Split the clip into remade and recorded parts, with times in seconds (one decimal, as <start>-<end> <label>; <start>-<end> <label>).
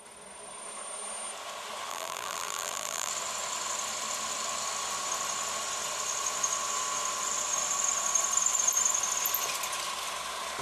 0.0-1.9 recorded; 1.9-3.1 remade; 3.1-10.6 recorded